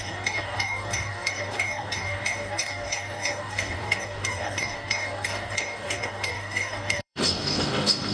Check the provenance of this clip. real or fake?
fake